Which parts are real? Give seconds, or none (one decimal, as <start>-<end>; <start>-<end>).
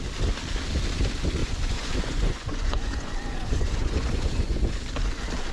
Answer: 0.0-1.4; 4.7-5.5